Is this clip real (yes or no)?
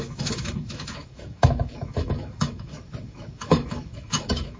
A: no